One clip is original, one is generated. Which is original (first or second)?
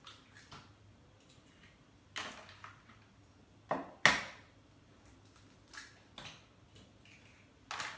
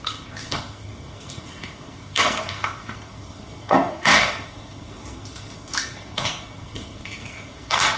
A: first